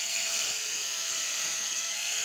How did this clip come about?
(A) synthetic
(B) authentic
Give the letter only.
A